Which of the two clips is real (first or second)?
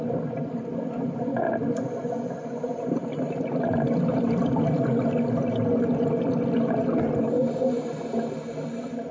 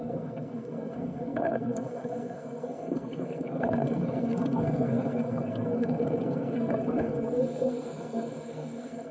first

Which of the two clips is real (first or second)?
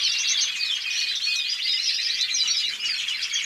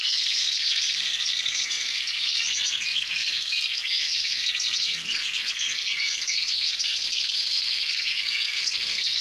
first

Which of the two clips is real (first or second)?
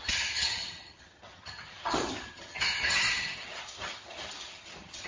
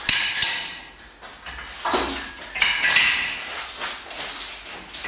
second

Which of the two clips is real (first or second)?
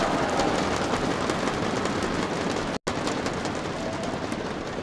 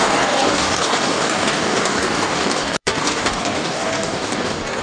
first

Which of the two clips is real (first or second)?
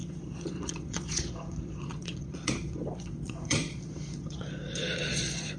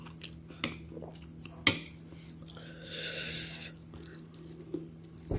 second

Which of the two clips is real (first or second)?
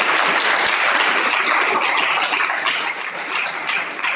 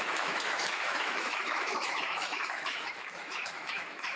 first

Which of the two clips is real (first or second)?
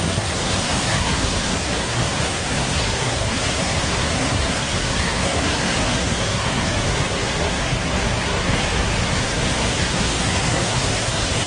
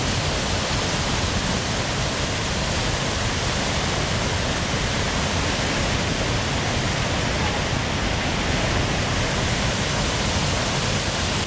second